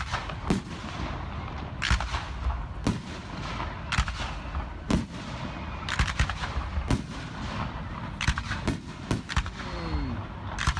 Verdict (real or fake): real